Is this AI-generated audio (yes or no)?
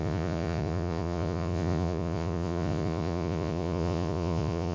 yes